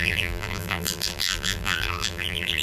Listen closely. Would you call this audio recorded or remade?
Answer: remade